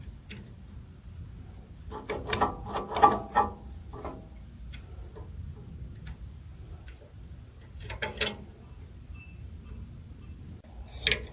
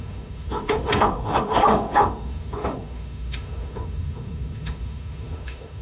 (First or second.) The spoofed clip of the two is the second